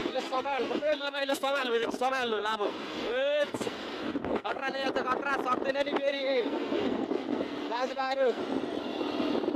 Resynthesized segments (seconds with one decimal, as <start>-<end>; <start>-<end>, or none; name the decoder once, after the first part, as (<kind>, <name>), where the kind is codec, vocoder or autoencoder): 0.0-4.9 (codec, SNAC); 6.1-8.4